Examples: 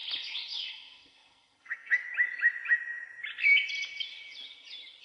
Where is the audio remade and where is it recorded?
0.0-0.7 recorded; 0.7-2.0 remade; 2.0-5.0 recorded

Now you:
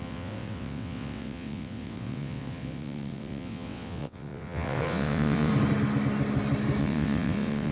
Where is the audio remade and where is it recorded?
0.0-5.5 remade; 5.5-6.8 recorded; 6.8-7.7 remade

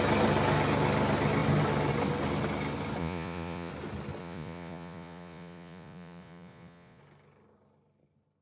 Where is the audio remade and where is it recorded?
0.0-3.0 recorded; 3.0-3.7 remade; 3.7-4.2 recorded; 4.2-7.0 remade; 7.0-8.4 recorded

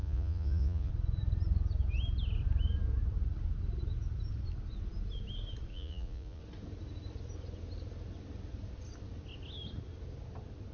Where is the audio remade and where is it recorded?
0.0-0.9 remade; 0.9-5.7 recorded; 5.7-6.4 remade; 6.4-10.7 recorded